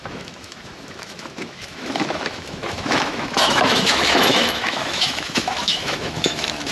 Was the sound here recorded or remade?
remade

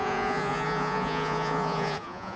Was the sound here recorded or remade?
remade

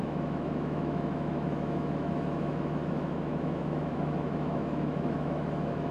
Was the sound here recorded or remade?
remade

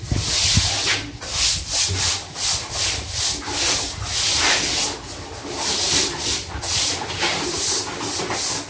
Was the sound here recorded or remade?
recorded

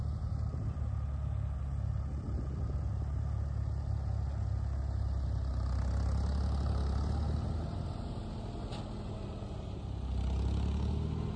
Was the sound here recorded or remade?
recorded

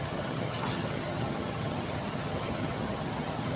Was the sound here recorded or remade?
remade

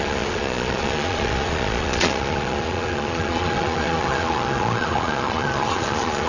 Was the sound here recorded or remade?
remade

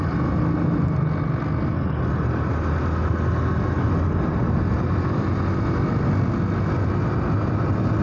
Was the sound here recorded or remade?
recorded